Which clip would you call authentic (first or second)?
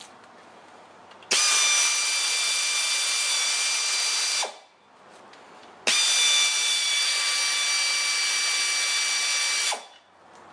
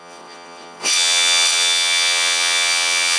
first